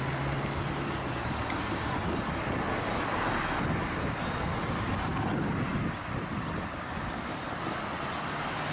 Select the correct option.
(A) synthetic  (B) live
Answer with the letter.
B